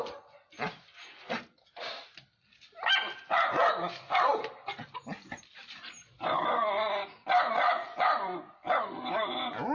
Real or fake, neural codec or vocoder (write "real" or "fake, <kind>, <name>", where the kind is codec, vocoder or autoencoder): real